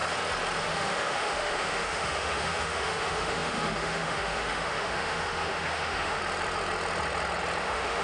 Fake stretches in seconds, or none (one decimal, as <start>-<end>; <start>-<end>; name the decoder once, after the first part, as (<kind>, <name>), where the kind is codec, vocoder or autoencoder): 0.6-6.2 (autoencoder, DAC-VAE); 7.6-8.0

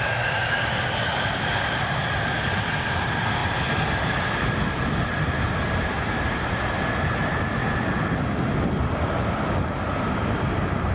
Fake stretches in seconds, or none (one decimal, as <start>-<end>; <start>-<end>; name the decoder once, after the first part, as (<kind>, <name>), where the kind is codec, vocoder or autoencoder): none

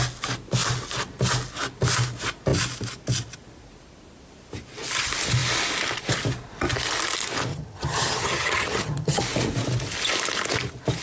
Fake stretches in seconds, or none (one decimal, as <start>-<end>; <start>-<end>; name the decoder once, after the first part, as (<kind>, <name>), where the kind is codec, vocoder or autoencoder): 7.5-9.2 (vocoder, HiFi-GAN)

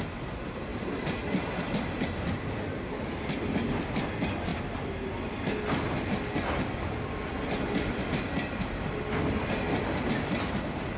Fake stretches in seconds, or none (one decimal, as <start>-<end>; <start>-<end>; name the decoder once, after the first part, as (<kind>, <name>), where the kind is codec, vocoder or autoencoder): 0.7-1.4 (vocoder, BigVGAN v2)

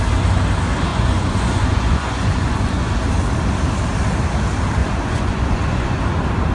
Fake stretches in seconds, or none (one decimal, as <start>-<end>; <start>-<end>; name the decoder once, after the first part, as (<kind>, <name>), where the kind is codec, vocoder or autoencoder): 0.9-2.9 (vocoder, Vocos); 4.8-6.0

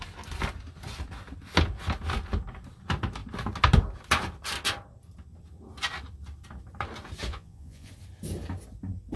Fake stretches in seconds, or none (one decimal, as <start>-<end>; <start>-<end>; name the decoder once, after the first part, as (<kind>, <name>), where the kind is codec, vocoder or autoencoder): 7.3-7.9 (vocoder, Vocos)